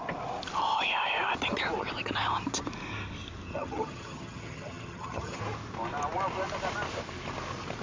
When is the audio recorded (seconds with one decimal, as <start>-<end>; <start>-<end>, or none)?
0.0-3.5; 5.4-7.8

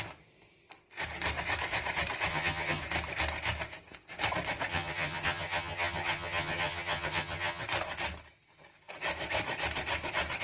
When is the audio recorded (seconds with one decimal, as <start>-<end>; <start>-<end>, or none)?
0.0-2.3; 2.8-4.7; 7.6-10.4

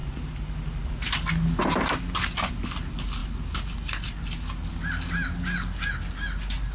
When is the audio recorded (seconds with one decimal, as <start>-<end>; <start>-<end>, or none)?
0.0-6.7